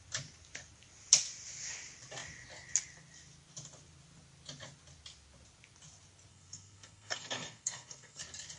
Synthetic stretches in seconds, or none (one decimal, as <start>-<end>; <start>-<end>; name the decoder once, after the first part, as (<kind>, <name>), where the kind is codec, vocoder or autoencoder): 6.3-8.2 (codec, SNAC)